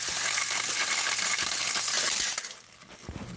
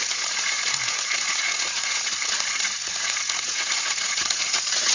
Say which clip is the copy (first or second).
second